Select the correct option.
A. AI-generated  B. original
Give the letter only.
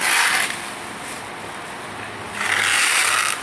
B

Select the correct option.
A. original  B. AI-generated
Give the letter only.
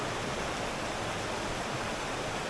A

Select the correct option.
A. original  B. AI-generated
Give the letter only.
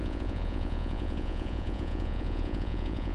B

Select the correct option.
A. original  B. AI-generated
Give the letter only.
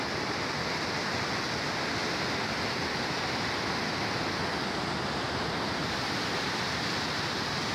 A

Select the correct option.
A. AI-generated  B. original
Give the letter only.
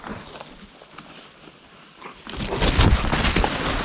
B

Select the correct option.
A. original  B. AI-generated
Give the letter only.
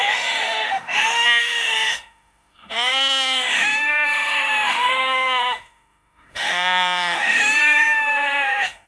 B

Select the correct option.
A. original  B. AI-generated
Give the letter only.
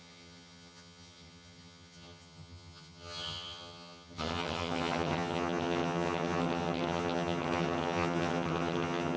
B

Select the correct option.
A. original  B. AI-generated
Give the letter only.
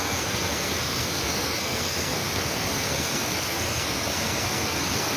B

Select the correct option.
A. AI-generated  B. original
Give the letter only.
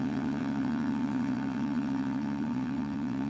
A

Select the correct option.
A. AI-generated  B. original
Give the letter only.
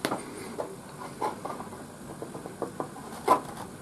B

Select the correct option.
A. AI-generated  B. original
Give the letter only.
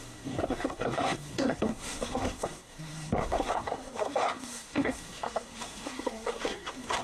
A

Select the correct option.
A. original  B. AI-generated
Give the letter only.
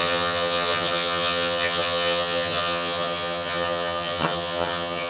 B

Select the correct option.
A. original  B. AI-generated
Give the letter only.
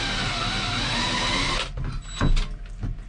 A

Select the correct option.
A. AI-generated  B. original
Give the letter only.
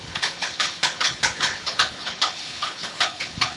A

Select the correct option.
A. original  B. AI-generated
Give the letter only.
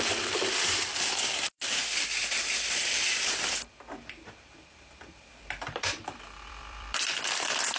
B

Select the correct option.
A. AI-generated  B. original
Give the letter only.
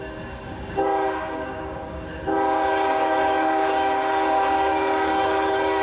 A